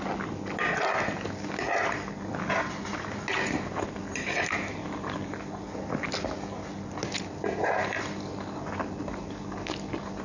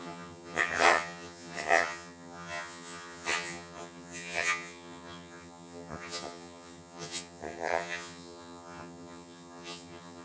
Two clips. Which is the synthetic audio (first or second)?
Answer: second